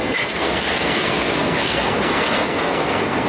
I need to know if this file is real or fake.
fake